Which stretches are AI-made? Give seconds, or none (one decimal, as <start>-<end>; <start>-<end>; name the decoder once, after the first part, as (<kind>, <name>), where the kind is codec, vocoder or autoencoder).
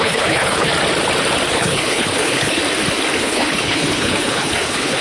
0.0-0.7 (codec, HILCodec); 1.5-2.6; 3.2-5.0